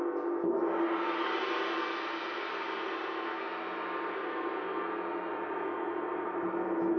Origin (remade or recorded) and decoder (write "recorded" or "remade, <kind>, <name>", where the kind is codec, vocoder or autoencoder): recorded